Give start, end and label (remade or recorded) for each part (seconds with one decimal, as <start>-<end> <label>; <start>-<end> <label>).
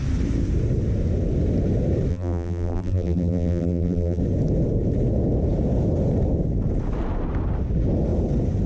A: 0.0-2.1 recorded; 2.1-4.2 remade; 4.2-8.7 recorded